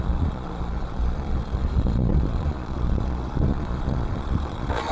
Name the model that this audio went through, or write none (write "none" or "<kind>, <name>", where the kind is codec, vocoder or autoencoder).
vocoder, Vocos